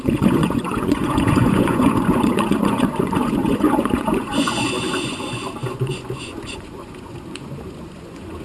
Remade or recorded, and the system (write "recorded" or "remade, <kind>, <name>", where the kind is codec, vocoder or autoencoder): remade, vocoder, Vocos